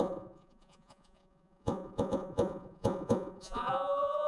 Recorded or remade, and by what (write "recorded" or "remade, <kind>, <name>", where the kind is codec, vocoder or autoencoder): remade, vocoder, Vocos